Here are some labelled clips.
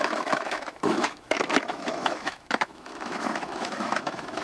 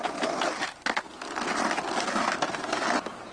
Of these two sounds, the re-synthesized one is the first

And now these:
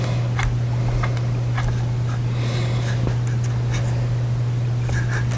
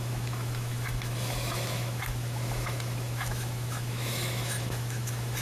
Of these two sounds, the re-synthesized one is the second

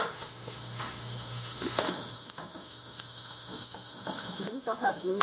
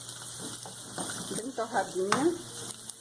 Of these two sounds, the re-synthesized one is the first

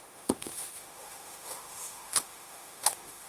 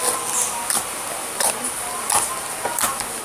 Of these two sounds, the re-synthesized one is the first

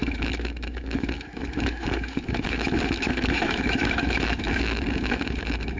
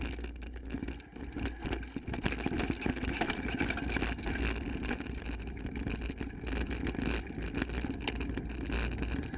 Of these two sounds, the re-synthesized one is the first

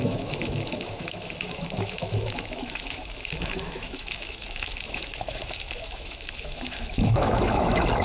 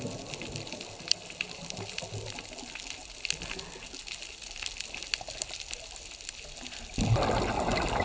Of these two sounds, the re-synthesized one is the first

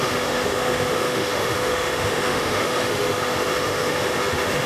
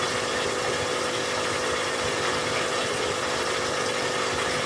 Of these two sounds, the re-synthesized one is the first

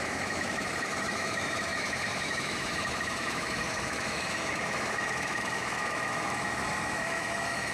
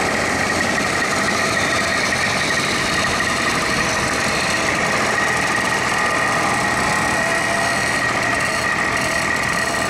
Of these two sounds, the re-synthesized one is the first